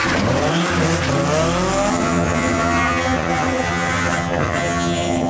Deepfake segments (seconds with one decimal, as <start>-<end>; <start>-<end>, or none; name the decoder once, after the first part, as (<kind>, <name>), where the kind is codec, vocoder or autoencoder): 1.9-5.3 (vocoder, HiFi-GAN)